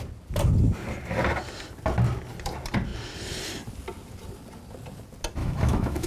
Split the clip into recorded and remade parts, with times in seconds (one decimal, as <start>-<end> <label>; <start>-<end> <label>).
0.0-5.4 recorded; 5.4-6.1 remade